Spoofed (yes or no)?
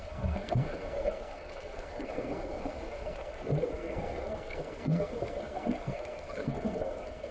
yes